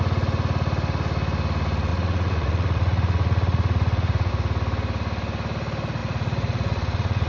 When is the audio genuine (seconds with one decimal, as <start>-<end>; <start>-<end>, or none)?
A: 0.0-1.9; 4.3-6.0